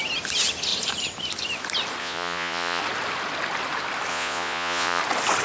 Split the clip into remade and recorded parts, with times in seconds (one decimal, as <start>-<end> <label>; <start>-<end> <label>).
0.0-2.0 recorded; 2.0-2.8 remade; 2.8-4.1 recorded; 4.1-5.0 remade; 5.0-5.4 recorded